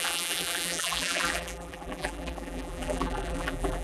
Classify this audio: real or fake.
fake